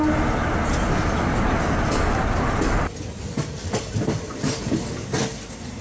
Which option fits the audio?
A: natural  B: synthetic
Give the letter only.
A